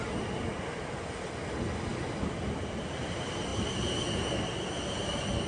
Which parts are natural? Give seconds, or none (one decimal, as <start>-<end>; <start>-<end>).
0.0-5.5